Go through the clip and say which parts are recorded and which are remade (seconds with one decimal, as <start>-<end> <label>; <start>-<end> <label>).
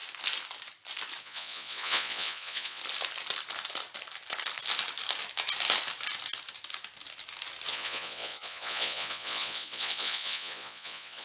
0.0-1.2 recorded; 1.2-2.8 remade; 2.8-7.7 recorded; 7.7-11.2 remade